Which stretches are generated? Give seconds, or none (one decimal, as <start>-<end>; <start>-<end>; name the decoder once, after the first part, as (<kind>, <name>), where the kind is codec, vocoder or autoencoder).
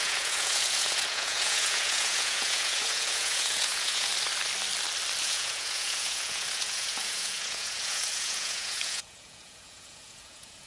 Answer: 0.0-4.1 (vocoder, Vocos); 5.2-10.7